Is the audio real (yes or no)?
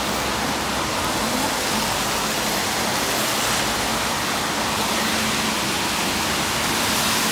yes